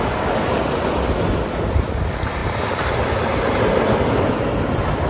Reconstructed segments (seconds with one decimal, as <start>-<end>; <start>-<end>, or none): none